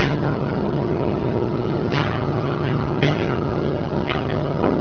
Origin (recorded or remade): remade